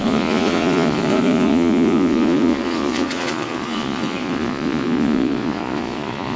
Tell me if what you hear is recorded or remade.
remade